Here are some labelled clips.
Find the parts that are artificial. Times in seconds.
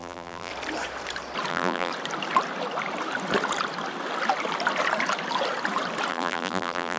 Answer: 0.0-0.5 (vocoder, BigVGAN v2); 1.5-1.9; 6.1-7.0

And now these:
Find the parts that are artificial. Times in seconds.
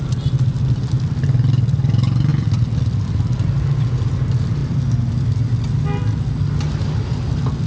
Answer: none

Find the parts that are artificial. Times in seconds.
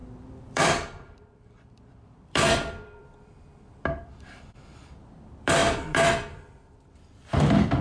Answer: 0.0-7.8 (vocoder, BigVGAN v2)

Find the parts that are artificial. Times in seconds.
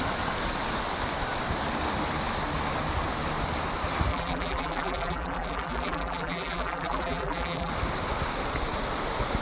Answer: 4.1-7.7 (vocoder, BigVGAN v2)